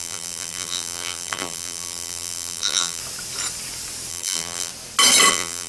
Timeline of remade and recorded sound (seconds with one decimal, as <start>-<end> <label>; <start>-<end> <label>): 0.0-3.0 remade; 3.0-4.1 recorded; 4.1-4.7 remade; 4.7-5.3 recorded; 5.3-5.7 remade